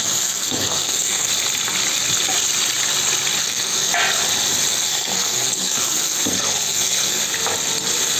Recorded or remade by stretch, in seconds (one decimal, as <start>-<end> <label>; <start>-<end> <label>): 0.0-1.3 remade; 1.3-3.4 recorded; 3.4-3.9 remade; 3.9-4.7 recorded; 4.7-7.2 remade; 7.2-8.2 recorded